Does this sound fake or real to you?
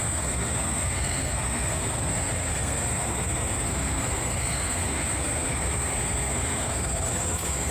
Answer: fake